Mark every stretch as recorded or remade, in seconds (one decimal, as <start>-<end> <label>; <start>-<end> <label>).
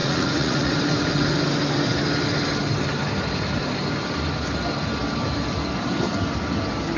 0.0-0.7 remade; 0.7-7.0 recorded